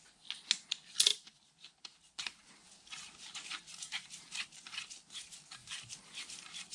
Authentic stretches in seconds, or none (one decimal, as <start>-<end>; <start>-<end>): 0.0-1.1; 2.5-3.6; 4.8-5.6; 6.3-6.7